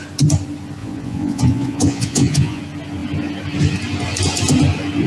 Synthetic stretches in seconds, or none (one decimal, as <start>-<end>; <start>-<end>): 0.8-2.6